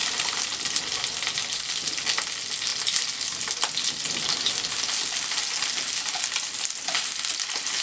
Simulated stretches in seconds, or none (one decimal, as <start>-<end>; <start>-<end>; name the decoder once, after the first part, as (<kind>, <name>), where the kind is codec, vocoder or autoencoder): none

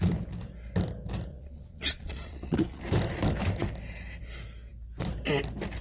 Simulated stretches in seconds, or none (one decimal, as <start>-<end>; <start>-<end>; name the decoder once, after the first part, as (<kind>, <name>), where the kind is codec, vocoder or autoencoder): 1.3-2.8 (vocoder, Vocos)

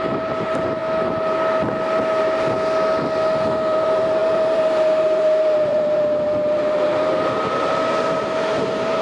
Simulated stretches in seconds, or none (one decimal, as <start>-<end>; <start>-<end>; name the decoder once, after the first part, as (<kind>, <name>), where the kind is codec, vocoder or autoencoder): 0.0-0.8 (vocoder, BigVGAN v2); 3.4-9.0

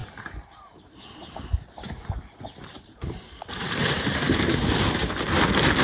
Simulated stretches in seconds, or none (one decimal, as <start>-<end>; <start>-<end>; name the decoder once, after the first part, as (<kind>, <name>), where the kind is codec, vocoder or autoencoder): 0.0-1.4 (vocoder, BigVGAN v2); 2.7-5.2

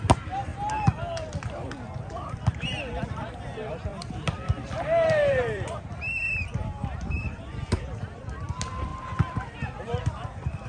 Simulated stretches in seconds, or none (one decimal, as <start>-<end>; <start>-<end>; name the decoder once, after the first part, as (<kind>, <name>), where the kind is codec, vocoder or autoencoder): 0.0-0.5 (vocoder, BigVGAN v2); 1.4-10.7